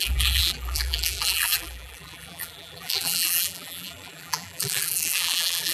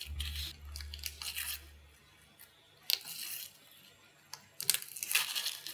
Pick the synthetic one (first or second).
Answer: first